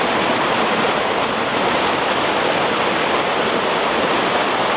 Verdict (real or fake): real